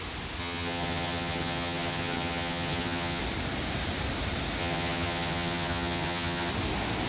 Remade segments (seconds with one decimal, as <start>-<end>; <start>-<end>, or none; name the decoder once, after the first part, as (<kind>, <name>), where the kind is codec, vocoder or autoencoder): 0.4-3.2 (vocoder, HiFi-GAN); 4.6-6.5